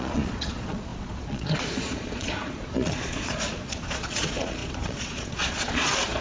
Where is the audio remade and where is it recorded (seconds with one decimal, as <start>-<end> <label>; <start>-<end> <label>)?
0.0-6.2 remade